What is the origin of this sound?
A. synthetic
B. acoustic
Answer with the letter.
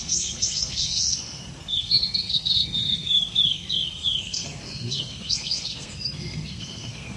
A